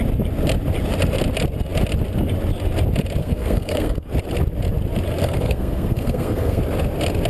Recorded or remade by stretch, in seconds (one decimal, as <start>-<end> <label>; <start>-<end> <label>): 0.0-3.2 recorded; 3.2-4.1 remade; 4.1-5.2 recorded; 5.2-6.6 remade; 6.6-7.3 recorded